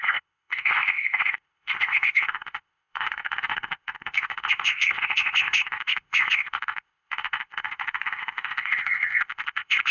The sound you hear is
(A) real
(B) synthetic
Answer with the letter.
B